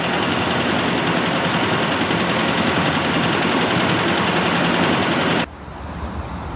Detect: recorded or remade recorded